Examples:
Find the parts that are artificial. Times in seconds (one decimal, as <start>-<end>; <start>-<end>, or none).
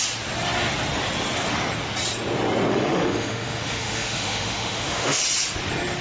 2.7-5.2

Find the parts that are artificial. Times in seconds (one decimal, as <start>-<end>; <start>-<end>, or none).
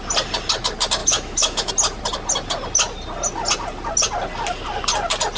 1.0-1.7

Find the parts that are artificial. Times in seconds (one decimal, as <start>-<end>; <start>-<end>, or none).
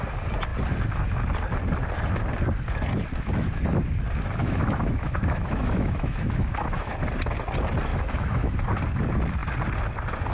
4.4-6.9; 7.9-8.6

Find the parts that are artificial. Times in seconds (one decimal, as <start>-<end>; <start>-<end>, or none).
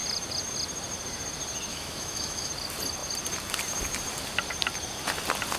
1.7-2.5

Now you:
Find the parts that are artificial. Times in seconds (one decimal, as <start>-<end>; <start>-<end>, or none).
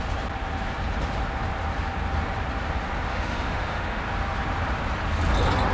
3.1-4.0